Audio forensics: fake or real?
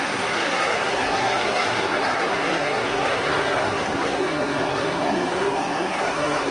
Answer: fake